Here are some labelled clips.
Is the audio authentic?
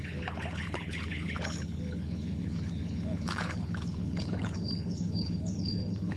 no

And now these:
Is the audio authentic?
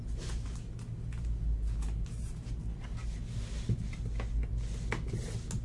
yes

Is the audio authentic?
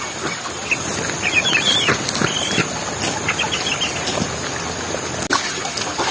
yes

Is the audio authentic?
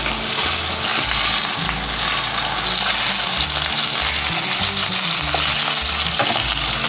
yes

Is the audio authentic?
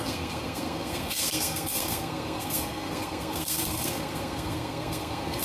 no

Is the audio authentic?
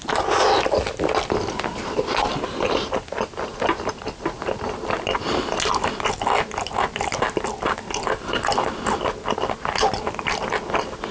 yes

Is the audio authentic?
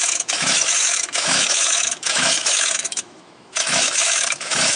no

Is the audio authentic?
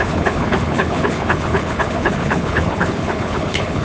no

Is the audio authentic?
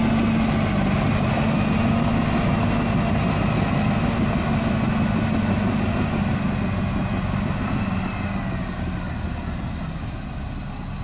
yes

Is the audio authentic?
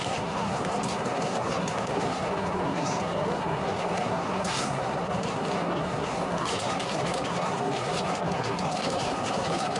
no